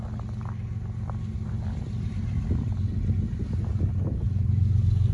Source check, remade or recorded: recorded